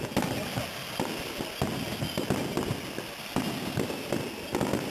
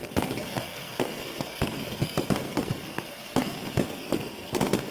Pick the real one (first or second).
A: first